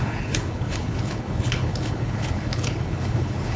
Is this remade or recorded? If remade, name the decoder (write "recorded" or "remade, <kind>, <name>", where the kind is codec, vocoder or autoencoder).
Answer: remade, codec, HILCodec